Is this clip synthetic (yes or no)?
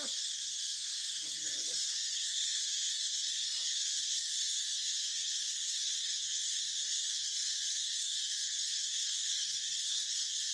yes